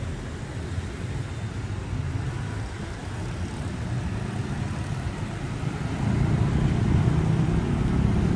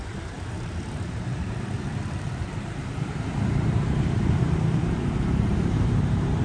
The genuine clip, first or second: first